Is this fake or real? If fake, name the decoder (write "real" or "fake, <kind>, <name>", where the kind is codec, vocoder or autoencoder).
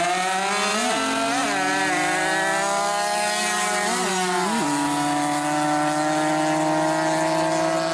real